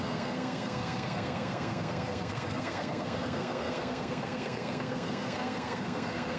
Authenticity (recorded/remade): remade